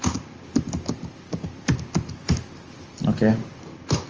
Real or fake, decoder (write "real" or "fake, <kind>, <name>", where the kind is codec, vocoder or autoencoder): real